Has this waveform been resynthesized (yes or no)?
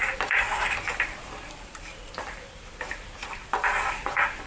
yes